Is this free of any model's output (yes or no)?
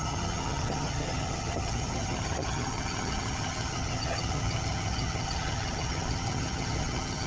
no